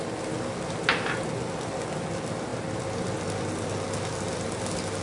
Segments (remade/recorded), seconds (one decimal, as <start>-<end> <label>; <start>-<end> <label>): 0.0-5.0 recorded